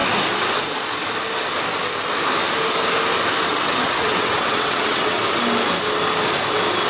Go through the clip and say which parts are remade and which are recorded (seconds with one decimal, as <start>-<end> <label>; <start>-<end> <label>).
0.0-3.5 recorded; 3.5-5.2 remade; 5.2-6.9 recorded